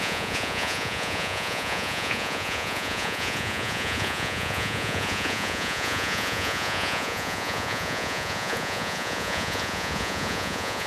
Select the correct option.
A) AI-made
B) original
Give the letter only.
A